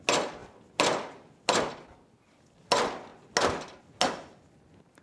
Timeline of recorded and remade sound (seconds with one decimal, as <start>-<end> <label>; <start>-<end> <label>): 0.0-5.0 recorded